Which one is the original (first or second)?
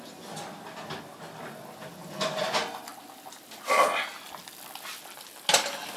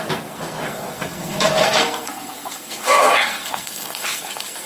first